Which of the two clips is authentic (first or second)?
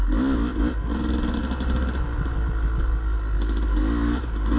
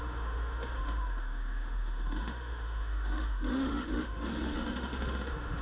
first